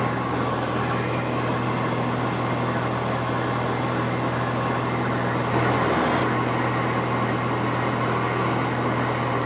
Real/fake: real